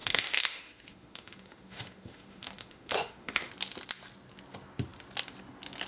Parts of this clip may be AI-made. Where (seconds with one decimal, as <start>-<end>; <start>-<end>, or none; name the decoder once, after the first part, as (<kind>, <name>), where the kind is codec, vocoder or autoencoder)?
0.0-3.5 (autoencoder, DAC-VAE)